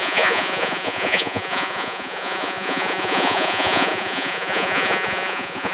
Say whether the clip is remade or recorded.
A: remade